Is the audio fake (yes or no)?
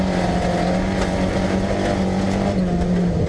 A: no